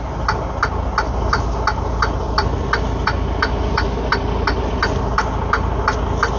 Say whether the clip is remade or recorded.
recorded